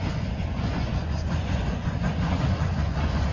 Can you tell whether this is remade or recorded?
remade